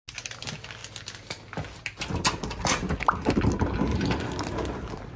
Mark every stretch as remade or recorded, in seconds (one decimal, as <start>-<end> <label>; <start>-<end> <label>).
0.0-5.2 recorded